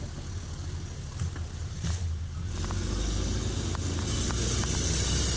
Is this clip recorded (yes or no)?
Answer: yes